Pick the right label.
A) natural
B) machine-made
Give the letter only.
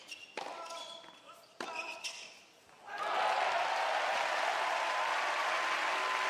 A